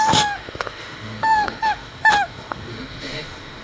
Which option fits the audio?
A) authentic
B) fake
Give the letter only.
B